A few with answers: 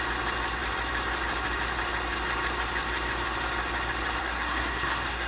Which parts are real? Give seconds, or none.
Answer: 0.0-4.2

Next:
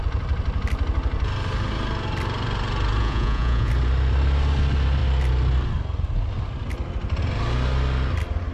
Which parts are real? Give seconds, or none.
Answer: 0.0-3.0; 3.7-8.5

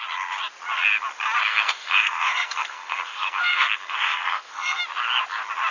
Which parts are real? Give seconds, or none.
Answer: 0.0-1.5; 4.8-5.7

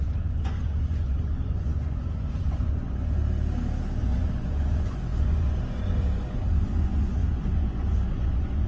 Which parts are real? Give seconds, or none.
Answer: 3.2-4.0